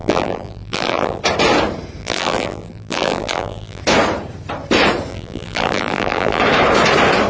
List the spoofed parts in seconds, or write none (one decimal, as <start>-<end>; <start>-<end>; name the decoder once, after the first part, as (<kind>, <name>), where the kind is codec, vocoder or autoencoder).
0.0-1.2 (vocoder, BigVGAN v2); 2.0-3.8; 5.1-6.4